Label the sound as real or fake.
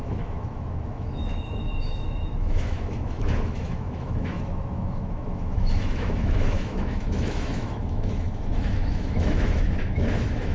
fake